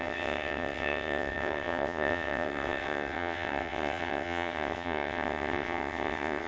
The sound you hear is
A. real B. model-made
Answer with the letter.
B